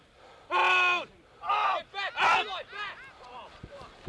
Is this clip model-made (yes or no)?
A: no